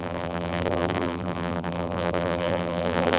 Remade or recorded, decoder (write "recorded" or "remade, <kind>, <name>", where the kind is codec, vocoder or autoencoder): remade, vocoder, BigVGAN v2